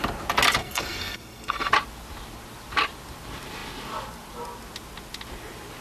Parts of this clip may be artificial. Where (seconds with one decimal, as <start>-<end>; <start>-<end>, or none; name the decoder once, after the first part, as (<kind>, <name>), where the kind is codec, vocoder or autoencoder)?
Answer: 0.6-1.7 (codec, SNAC)